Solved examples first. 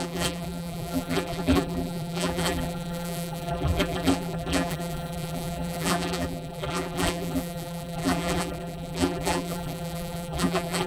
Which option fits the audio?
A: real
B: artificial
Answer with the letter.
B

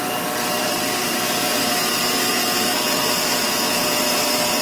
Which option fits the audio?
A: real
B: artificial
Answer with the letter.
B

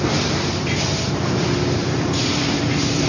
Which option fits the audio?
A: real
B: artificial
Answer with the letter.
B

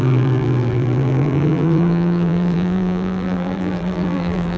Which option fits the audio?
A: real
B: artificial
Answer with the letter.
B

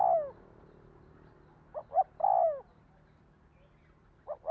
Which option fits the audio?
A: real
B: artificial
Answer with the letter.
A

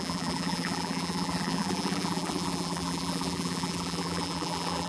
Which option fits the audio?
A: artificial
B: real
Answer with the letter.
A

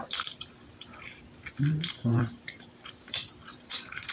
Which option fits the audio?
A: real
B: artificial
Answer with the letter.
B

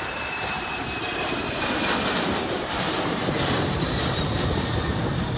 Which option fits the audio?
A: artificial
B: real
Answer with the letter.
A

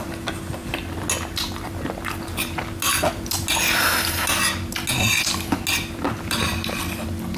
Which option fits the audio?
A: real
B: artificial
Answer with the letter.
A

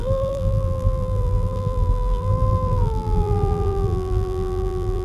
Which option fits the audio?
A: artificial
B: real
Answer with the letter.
A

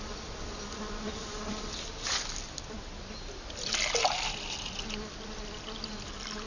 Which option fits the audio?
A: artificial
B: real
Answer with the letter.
B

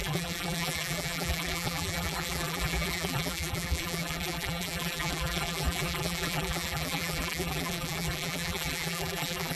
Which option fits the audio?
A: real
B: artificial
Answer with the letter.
B